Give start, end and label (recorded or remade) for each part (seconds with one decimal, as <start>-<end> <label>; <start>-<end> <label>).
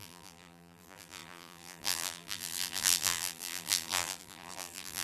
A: 0.0-5.0 remade